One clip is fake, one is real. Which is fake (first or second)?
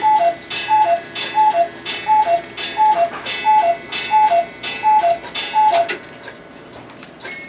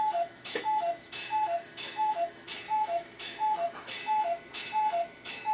second